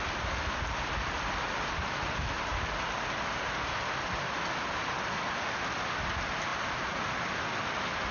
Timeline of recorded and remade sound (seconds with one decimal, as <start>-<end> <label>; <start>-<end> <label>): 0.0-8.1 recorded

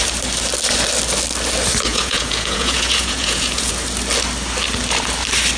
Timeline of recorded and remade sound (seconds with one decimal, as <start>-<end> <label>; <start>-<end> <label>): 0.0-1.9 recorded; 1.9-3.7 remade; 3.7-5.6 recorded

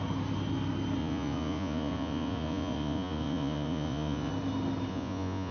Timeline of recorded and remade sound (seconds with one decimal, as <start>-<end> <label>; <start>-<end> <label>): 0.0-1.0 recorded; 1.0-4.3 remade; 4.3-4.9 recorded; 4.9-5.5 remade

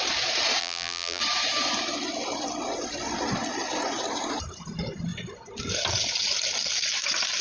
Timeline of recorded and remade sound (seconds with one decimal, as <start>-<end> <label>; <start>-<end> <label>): 0.0-0.6 recorded; 0.6-1.2 remade; 1.2-7.4 recorded